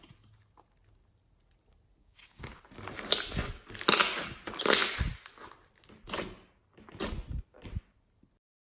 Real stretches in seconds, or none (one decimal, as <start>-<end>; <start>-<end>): 0.0-2.0; 2.6-8.8